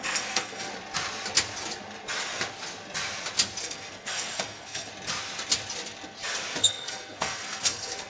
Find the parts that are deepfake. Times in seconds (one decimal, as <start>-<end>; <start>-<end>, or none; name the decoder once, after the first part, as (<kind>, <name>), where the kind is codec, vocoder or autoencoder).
0.0-0.7 (codec, SNAC); 3.6-4.9; 6.6-8.1